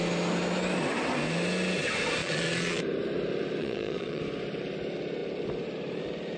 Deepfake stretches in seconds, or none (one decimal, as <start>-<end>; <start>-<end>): 2.2-2.8; 3.6-4.2